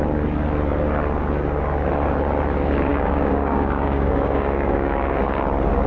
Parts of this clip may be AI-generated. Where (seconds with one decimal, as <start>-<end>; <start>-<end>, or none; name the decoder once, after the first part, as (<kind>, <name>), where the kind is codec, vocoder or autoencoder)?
2.9-5.2 (codec, DAC)